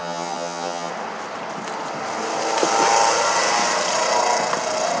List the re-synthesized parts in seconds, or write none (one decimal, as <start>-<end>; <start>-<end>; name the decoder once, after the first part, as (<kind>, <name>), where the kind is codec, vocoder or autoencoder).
0.0-0.9 (vocoder, HiFi-GAN)